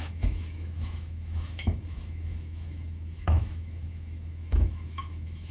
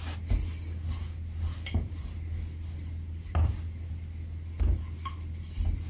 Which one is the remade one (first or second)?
first